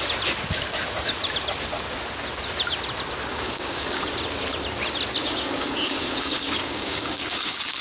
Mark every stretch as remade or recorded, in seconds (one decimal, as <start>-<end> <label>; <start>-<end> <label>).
0.0-3.3 recorded; 3.3-4.1 remade; 4.1-5.2 recorded; 5.2-7.8 remade